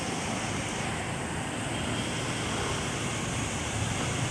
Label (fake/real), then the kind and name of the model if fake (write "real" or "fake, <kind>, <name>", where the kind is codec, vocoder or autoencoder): real